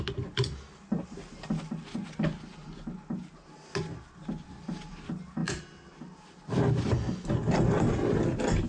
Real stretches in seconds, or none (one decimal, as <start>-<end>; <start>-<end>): 0.0-8.7